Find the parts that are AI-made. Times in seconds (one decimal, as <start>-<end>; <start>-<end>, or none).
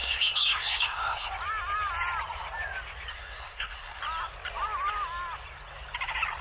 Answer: 0.0-1.3; 3.1-4.0